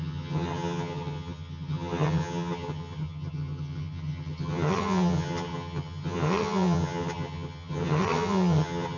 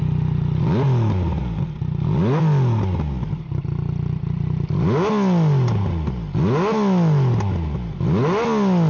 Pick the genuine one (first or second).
second